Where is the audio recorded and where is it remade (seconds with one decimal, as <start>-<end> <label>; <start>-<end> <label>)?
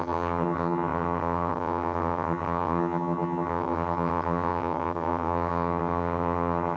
0.0-6.8 remade